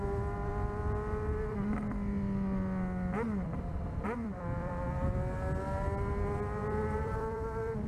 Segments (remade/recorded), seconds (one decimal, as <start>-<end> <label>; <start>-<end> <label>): 0.0-3.7 recorded; 3.7-4.7 remade; 4.7-6.6 recorded; 6.6-7.9 remade